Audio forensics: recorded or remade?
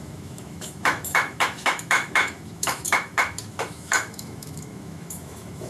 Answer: remade